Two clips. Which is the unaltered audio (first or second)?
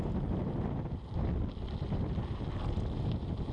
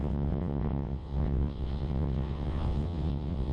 first